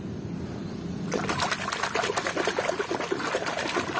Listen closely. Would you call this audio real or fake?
real